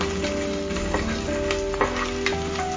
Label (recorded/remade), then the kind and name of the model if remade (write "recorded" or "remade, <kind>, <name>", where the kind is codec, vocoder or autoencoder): recorded